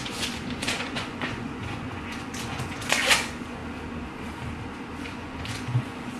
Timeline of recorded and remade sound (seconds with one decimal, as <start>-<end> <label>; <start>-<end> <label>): 0.0-3.6 remade; 3.6-5.0 recorded; 5.0-6.2 remade